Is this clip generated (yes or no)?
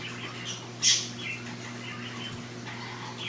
no